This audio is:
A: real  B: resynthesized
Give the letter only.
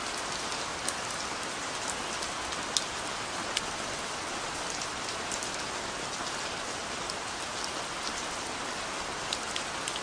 A